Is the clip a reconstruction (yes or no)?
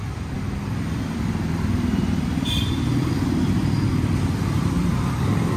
yes